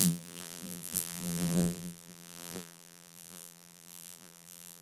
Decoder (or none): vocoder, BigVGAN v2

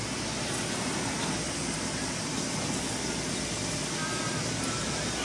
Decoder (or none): none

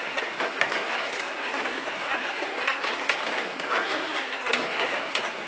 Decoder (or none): codec, SNAC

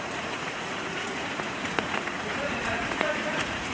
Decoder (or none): vocoder, Vocos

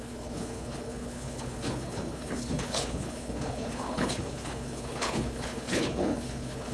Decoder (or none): codec, HILCodec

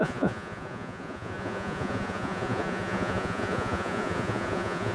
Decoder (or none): vocoder, Vocos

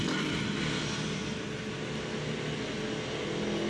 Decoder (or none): none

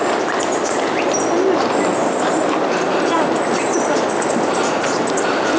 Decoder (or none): none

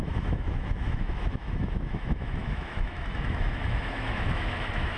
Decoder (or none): autoencoder, DAC-VAE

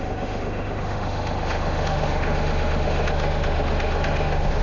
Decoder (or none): autoencoder, DAC-VAE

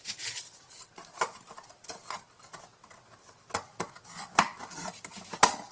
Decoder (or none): none